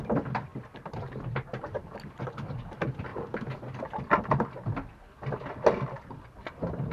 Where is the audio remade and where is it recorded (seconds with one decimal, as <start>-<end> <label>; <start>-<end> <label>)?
0.0-6.9 recorded